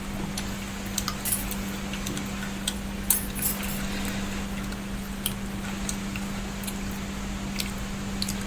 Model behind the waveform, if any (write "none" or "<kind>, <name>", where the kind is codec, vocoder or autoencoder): none